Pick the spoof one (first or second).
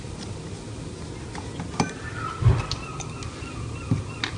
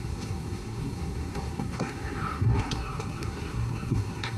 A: second